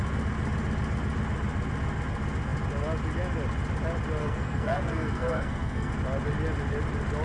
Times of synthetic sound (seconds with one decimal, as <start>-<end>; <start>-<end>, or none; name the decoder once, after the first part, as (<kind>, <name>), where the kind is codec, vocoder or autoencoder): 4.2-5.9 (codec, SNAC)